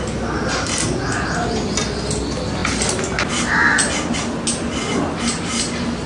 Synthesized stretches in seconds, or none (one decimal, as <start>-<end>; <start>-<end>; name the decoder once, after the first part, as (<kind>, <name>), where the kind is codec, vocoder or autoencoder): none

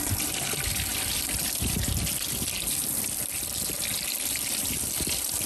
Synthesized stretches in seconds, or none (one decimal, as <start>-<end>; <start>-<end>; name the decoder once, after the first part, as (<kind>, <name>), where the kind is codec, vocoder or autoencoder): none

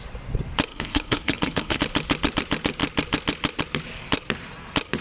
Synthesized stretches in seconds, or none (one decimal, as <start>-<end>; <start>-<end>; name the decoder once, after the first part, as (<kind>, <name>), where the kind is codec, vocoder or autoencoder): 0.7-1.8 (codec, HILCodec)

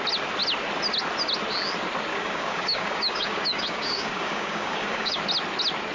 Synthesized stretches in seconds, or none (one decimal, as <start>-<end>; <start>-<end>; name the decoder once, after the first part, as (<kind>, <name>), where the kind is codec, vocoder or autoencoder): 2.1-5.2 (codec, DAC)

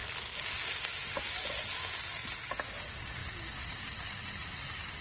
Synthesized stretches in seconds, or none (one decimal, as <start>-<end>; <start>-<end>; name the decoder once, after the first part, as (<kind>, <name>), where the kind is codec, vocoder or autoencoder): none

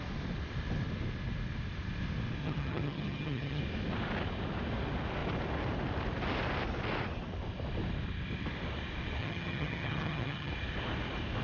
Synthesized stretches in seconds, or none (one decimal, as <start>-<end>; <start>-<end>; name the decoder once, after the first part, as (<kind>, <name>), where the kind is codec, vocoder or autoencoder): 2.4-3.6 (vocoder, HiFi-GAN); 9.2-10.5